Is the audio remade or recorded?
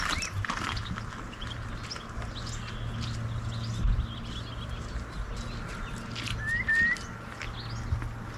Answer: recorded